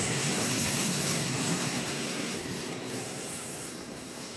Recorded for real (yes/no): no